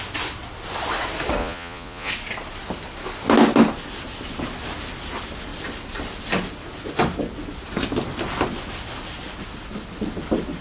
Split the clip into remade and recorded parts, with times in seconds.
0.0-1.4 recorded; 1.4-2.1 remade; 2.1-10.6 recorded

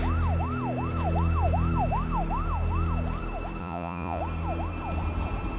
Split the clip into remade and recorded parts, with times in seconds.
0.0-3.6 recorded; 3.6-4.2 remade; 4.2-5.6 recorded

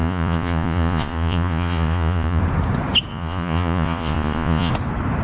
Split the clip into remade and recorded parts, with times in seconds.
0.0-2.4 remade; 2.4-3.1 recorded; 3.1-4.7 remade; 4.7-5.2 recorded

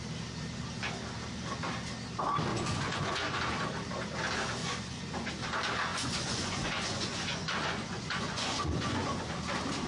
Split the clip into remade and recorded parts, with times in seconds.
0.0-2.5 recorded; 2.5-3.4 remade; 3.4-4.6 recorded; 4.6-5.3 remade; 5.3-5.9 recorded; 5.9-9.2 remade; 9.2-9.9 recorded

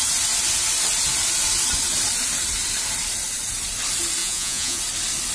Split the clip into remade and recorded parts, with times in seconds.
0.0-4.2 recorded; 4.2-4.8 remade; 4.8-5.3 recorded